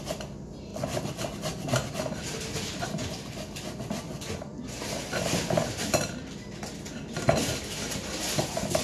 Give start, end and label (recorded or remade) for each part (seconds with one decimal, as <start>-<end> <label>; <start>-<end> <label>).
0.0-8.8 recorded